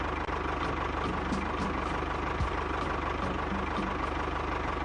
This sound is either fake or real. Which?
real